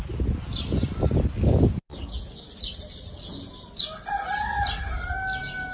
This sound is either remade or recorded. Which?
recorded